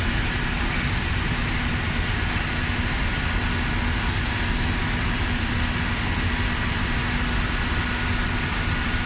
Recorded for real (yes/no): yes